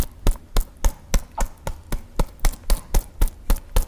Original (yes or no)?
yes